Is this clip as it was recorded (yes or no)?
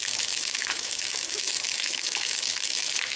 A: no